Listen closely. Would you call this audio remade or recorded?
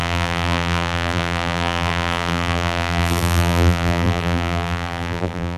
remade